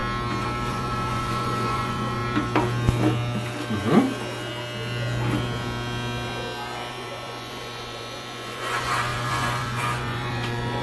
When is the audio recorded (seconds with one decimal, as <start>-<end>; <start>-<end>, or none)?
0.0-0.7; 2.2-6.9